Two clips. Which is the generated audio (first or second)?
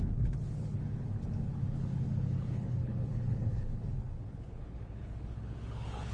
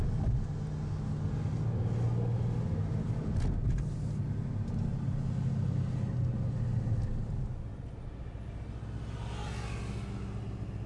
first